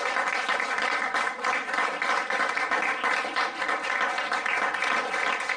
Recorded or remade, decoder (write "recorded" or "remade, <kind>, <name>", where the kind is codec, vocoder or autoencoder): recorded